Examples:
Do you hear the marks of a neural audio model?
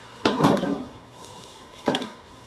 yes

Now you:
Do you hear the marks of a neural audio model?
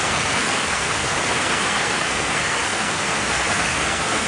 yes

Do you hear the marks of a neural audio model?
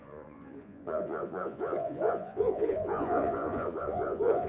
yes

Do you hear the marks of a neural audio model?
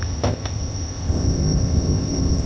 yes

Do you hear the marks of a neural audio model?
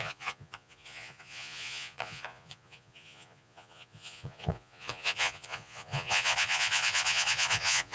yes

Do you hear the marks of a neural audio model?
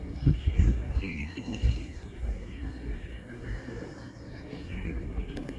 yes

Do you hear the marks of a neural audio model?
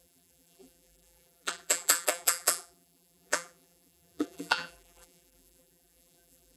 yes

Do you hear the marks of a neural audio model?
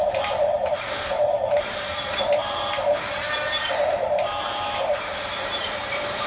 yes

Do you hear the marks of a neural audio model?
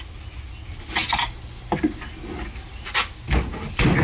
no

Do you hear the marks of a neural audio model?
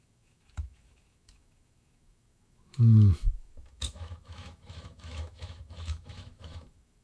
yes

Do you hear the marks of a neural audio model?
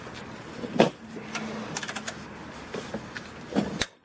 yes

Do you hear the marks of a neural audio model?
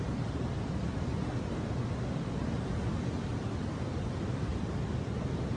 no